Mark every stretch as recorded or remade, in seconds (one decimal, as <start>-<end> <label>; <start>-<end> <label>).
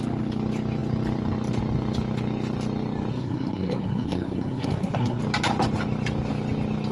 0.0-3.1 recorded; 3.1-5.2 remade; 5.2-6.9 recorded